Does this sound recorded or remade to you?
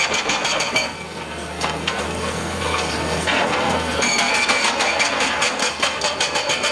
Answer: remade